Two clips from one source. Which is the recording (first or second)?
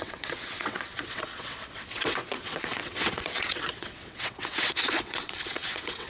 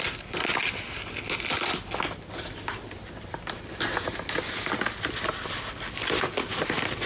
second